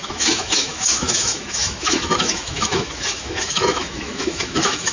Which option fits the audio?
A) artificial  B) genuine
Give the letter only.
A